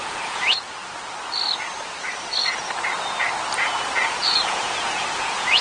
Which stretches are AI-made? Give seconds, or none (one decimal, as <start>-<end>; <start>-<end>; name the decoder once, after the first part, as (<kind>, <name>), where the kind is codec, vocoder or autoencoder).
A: 0.0-0.8 (vocoder, Vocos); 4.2-5.6